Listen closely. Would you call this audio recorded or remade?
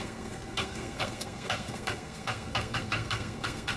remade